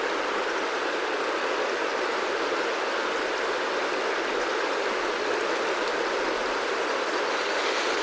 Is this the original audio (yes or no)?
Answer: yes